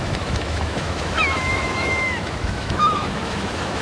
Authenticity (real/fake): fake